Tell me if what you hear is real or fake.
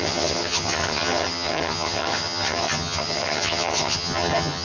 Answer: fake